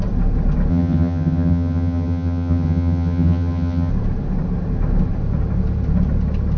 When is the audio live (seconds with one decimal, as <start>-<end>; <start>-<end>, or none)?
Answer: 0.0-0.7; 3.9-6.6